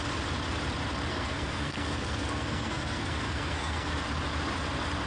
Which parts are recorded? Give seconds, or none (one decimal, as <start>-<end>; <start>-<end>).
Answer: 0.0-1.1; 3.9-5.1